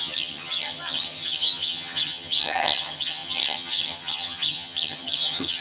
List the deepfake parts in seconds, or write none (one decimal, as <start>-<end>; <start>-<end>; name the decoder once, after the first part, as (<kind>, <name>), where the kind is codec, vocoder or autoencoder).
0.0-5.6 (vocoder, HiFi-GAN)